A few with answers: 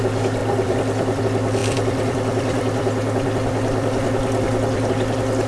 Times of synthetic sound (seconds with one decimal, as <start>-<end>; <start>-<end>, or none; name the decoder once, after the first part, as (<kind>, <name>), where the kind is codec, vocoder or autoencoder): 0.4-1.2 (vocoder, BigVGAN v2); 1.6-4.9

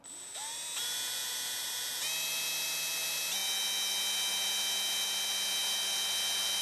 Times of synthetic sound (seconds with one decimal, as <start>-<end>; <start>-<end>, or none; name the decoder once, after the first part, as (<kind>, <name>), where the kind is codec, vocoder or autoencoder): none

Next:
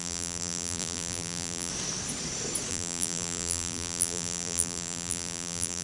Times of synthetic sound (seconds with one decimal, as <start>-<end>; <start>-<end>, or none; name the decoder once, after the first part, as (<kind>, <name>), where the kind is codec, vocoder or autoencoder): 0.0-1.7 (vocoder, BigVGAN v2); 2.7-5.8